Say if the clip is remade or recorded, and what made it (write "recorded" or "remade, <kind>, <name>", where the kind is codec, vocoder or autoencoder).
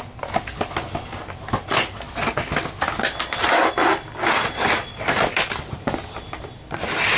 recorded